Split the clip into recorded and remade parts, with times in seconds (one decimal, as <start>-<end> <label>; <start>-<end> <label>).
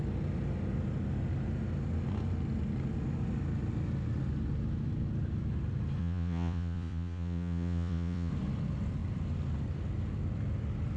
0.0-6.0 recorded; 6.0-8.3 remade; 8.3-11.0 recorded